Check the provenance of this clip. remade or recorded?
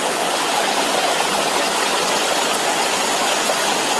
remade